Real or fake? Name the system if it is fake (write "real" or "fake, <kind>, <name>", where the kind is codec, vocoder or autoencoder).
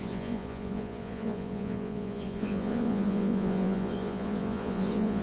fake, vocoder, Vocos